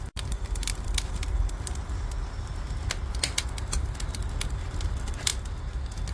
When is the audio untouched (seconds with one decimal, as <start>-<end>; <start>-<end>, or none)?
5.3-6.1